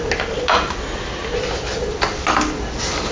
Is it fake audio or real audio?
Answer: real